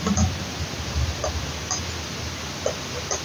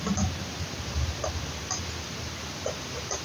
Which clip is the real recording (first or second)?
first